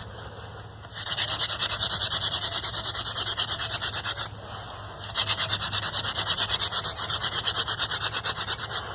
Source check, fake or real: real